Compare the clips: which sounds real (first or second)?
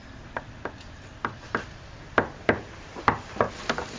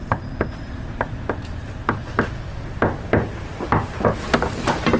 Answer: second